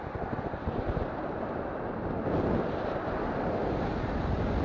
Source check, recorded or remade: recorded